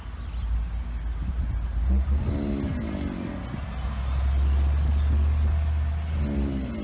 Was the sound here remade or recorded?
recorded